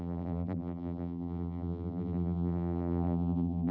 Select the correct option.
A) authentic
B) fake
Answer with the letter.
B